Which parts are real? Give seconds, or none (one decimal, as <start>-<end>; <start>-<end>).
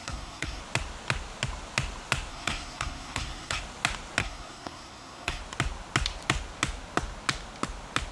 0.6-2.3; 3.6-4.2; 5.4-8.1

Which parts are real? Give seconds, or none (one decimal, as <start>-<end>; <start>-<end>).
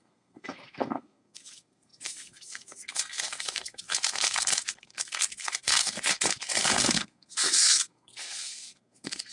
none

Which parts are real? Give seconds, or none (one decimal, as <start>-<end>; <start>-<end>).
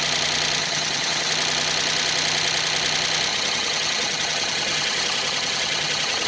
0.0-0.6; 1.3-3.3